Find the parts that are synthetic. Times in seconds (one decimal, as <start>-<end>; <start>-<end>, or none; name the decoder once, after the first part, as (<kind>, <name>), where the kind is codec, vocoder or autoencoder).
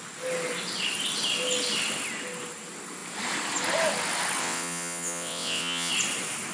4.4-5.9 (vocoder, WaveNeXt)